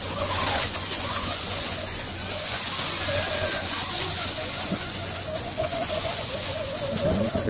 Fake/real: fake